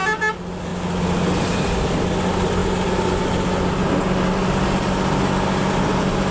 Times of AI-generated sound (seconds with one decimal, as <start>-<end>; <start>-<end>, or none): none